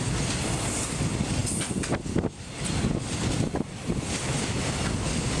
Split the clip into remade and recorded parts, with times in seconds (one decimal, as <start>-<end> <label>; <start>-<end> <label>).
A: 0.0-5.4 recorded

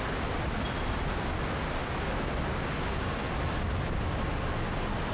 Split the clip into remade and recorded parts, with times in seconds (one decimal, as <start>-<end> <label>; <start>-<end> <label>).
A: 0.0-5.1 recorded

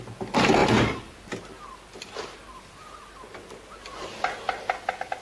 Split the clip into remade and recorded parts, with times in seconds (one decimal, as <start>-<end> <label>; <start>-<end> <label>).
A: 0.0-5.2 recorded